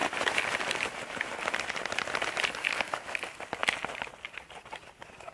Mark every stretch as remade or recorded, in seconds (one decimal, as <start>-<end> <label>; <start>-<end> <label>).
0.0-5.3 recorded